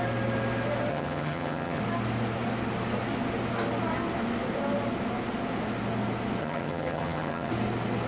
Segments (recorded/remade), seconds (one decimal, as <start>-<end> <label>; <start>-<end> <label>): 0.0-0.9 recorded; 0.9-1.8 remade; 1.8-6.4 recorded; 6.4-7.5 remade; 7.5-8.1 recorded